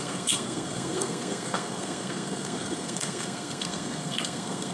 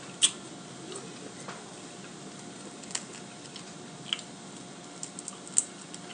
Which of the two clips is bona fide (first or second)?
second